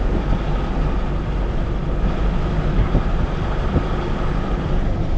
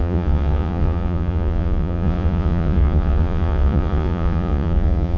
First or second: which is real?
first